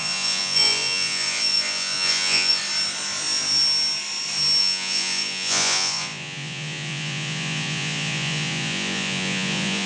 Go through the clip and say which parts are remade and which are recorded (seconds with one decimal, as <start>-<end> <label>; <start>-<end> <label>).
0.0-2.6 remade; 2.6-4.6 recorded; 4.6-9.9 remade